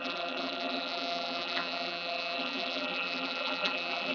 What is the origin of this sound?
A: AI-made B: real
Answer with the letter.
A